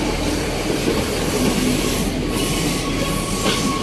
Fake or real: real